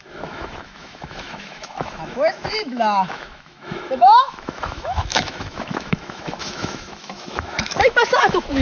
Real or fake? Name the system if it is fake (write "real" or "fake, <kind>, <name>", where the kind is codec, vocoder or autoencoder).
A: fake, autoencoder, DAC-VAE